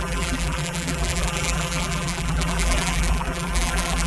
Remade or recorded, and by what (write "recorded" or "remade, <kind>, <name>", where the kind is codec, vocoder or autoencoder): remade, vocoder, BigVGAN v2